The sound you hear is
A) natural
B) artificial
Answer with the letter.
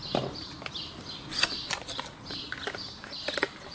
A